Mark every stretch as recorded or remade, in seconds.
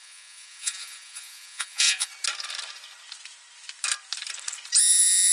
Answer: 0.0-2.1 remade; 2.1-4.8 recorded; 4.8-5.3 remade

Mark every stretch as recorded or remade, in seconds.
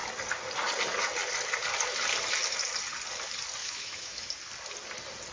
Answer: 0.0-3.6 recorded; 3.6-4.3 remade; 4.3-5.3 recorded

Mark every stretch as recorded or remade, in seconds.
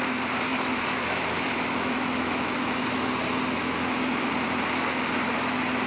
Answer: 0.0-0.5 recorded; 0.5-3.1 remade; 3.1-3.6 recorded; 3.6-4.3 remade; 4.3-5.9 recorded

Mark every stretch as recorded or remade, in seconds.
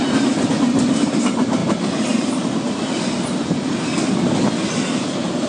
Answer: 0.0-5.5 recorded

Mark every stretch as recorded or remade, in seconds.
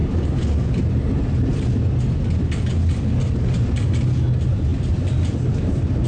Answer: 0.0-6.1 recorded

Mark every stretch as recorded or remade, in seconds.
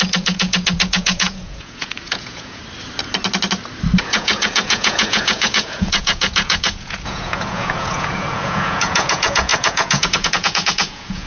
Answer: 0.0-2.6 remade; 2.6-4.0 recorded; 4.0-11.3 remade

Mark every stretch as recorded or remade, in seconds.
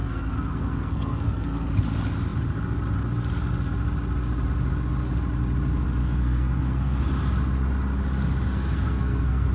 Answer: 0.0-1.7 remade; 1.7-6.0 recorded; 6.0-7.0 remade; 7.0-8.5 recorded; 8.5-9.5 remade